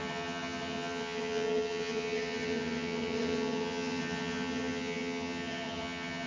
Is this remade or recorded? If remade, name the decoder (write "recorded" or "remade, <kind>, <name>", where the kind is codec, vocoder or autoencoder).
remade, vocoder, HiFi-GAN